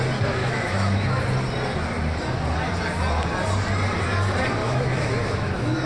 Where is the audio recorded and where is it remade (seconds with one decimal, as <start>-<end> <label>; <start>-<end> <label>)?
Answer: 0.0-0.4 recorded; 0.4-1.2 remade; 1.2-4.6 recorded; 4.6-5.9 remade